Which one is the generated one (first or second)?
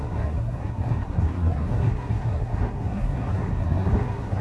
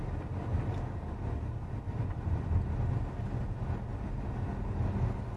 first